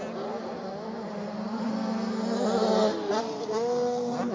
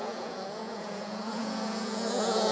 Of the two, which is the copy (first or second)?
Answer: second